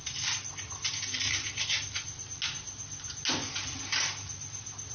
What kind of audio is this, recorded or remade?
recorded